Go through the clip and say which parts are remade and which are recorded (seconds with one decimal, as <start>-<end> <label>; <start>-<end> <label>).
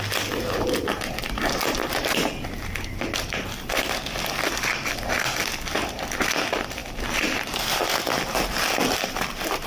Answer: 0.0-9.7 recorded